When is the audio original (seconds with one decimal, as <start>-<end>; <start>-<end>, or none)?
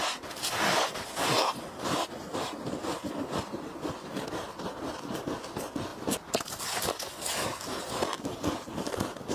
0.0-9.3